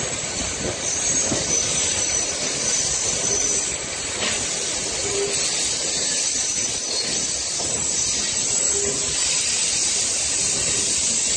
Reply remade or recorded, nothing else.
recorded